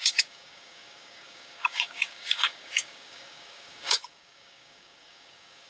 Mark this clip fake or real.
fake